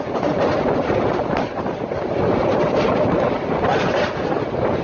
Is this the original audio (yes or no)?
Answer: yes